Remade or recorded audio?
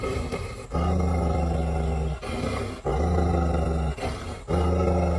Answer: recorded